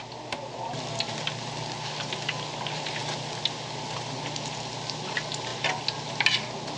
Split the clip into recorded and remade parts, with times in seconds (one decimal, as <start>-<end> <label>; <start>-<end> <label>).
0.0-6.8 recorded